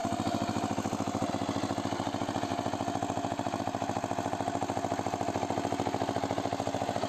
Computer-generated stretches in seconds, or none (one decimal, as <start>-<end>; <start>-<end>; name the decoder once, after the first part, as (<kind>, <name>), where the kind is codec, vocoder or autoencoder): none